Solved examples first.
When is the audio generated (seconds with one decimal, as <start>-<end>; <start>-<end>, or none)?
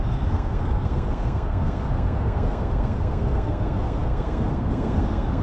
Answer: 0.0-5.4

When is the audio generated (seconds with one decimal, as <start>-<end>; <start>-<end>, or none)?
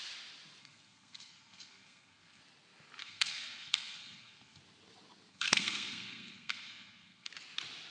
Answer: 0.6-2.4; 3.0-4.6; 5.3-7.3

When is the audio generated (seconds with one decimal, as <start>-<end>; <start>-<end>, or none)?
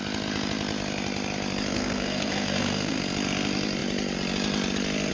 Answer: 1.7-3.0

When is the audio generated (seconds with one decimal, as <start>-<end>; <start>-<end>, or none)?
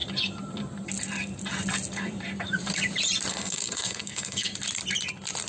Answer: 3.3-4.5